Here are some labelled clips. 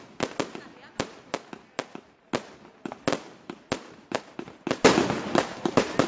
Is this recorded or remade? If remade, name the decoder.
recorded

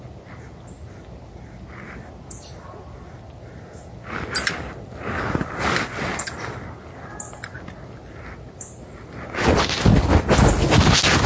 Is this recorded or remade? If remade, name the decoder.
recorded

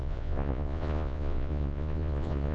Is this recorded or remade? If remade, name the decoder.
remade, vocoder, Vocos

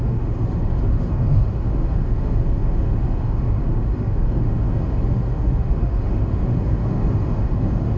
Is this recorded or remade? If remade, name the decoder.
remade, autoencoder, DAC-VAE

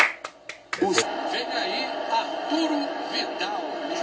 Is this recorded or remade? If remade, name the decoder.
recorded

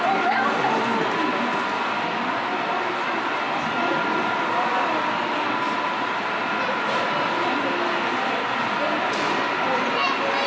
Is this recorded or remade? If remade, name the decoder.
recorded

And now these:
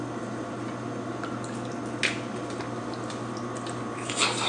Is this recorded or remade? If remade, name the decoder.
recorded